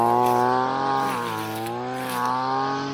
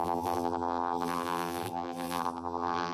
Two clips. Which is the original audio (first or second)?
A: first